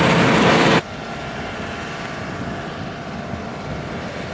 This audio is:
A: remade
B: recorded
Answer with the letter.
B